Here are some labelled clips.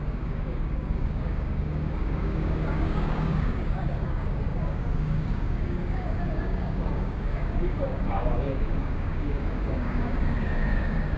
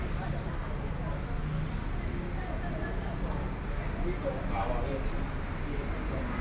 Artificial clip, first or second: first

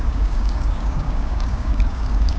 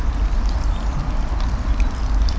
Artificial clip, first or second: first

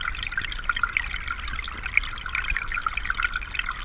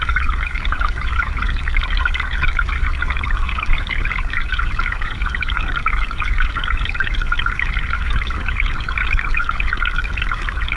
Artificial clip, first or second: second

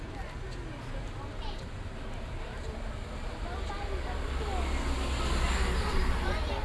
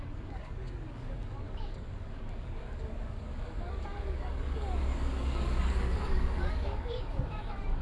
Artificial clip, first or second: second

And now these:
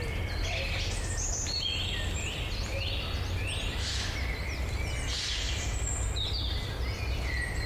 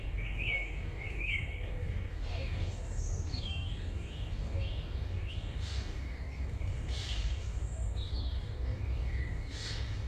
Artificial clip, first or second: second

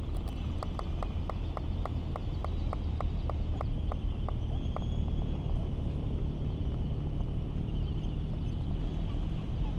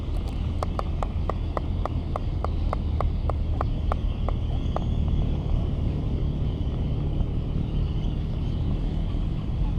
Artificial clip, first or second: second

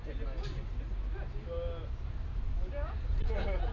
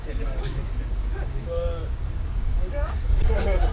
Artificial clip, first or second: second